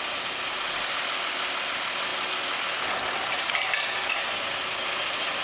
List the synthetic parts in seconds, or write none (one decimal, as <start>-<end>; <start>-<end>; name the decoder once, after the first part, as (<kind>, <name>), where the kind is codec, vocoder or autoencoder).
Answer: none

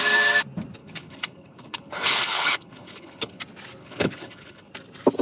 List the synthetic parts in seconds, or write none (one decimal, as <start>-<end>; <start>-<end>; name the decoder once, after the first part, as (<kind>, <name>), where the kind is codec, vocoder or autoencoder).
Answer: 0.8-3.4 (codec, HILCodec); 3.8-4.7